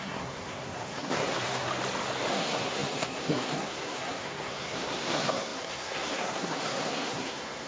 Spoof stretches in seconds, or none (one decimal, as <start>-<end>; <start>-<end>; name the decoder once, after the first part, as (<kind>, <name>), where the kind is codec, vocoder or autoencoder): 0.0-1.7 (codec, SNAC); 2.3-7.7